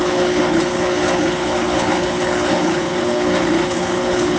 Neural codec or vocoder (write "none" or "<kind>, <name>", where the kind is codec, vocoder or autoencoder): codec, HILCodec